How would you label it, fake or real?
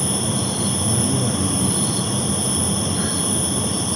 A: real